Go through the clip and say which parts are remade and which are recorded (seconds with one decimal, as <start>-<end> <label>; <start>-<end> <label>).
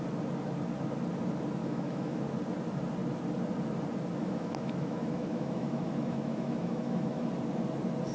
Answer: 0.0-1.6 recorded; 1.6-2.2 remade; 2.2-4.2 recorded; 4.2-7.3 remade; 7.3-8.1 recorded